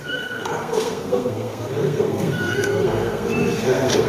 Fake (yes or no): yes